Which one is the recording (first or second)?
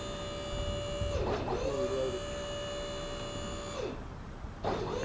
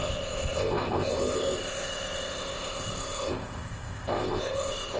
first